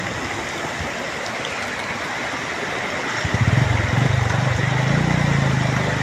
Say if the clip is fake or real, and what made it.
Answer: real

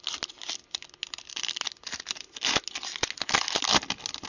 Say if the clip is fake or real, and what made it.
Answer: real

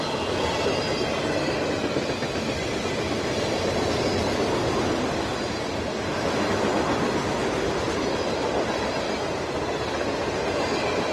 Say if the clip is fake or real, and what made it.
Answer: real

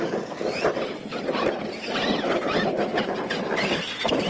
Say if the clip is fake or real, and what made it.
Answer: real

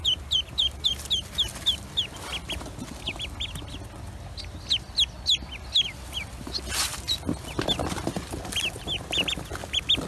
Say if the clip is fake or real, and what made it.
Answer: real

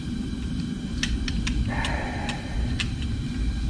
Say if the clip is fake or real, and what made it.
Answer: real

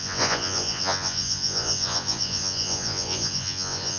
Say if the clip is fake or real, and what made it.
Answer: fake, vocoder, Vocos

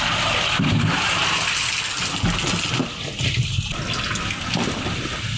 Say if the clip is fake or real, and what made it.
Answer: real